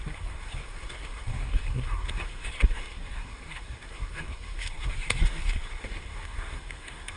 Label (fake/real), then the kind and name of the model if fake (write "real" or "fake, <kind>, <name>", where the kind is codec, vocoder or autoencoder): fake, codec, SNAC